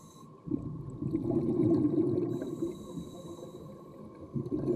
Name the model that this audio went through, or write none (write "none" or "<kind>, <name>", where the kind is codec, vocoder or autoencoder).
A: none